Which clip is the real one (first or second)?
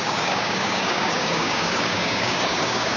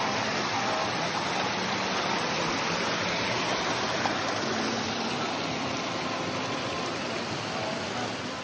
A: second